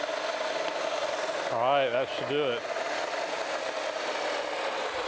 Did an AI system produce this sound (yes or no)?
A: no